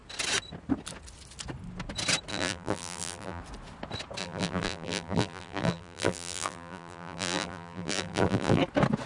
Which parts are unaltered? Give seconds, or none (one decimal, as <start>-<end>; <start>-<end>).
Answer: 0.0-2.3; 3.4-4.2; 8.6-9.1